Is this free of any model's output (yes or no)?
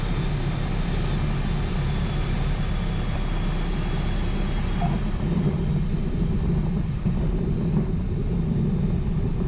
yes